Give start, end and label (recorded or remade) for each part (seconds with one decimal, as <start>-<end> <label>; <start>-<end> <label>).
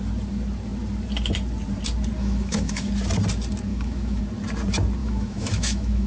0.0-2.2 recorded; 2.2-2.9 remade; 2.9-3.7 recorded; 3.7-4.2 remade; 4.2-5.0 recorded; 5.0-6.1 remade